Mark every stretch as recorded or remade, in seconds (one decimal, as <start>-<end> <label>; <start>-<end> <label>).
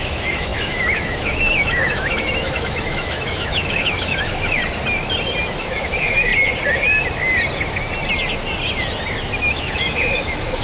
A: 0.0-4.6 remade; 4.6-5.4 recorded; 5.4-6.3 remade; 6.3-9.5 recorded; 9.5-10.6 remade